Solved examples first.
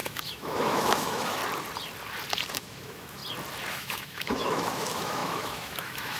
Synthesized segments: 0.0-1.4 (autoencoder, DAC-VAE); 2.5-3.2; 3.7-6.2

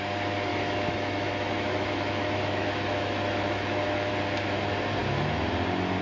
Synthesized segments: 0.5-4.1 (autoencoder, DAC-VAE); 5.0-5.5

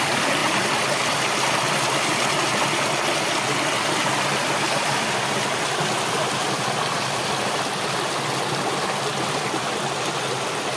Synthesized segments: none

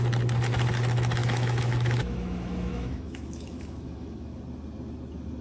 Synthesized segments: 1.2-4.4 (autoencoder, DAC-VAE)

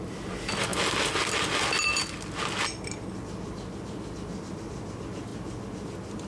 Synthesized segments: none